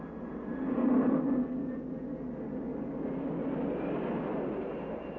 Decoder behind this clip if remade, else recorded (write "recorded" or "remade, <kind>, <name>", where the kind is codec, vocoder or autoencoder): recorded